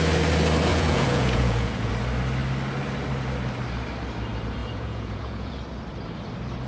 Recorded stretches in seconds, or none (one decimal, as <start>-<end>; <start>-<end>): 0.0-0.7; 1.9-4.6; 5.6-6.7